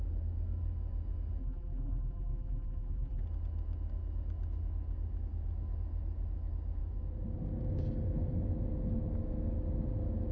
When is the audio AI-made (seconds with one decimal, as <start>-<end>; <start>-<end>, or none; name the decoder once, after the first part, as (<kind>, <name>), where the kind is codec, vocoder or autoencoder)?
1.4-3.2 (vocoder, BigVGAN v2)